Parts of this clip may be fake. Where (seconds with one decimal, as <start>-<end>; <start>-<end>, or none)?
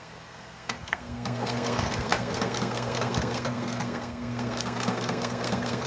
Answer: 0.0-5.9